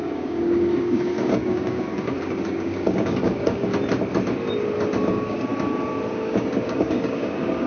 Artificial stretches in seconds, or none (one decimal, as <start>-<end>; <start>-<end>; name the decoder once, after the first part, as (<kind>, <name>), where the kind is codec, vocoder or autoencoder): 0.0-3.7 (codec, DAC); 5.1-5.5; 6.1-7.7